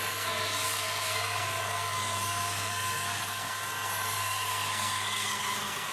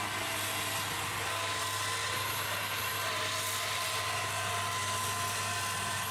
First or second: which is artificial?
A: first